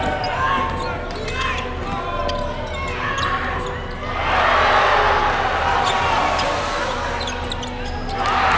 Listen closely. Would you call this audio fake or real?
real